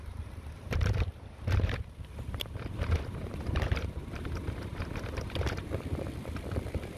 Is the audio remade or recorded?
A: remade